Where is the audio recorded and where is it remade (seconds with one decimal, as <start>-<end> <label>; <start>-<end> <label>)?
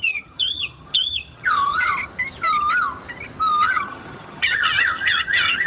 0.0-1.9 remade; 1.9-3.6 recorded; 3.6-5.7 remade